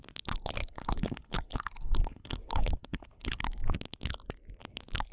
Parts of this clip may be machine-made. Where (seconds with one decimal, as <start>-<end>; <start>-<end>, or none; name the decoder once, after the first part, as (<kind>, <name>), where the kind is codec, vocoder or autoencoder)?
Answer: 0.6-3.4 (codec, HILCodec)